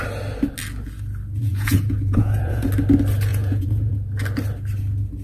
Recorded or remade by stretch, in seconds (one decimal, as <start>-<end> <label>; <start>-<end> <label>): 0.0-1.4 recorded; 1.4-2.7 remade; 2.7-3.3 recorded; 3.3-3.9 remade; 3.9-5.2 recorded

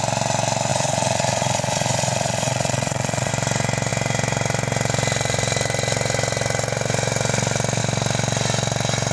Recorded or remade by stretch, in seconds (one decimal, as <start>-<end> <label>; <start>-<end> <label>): 0.0-0.7 recorded; 0.7-3.3 remade; 3.3-9.1 recorded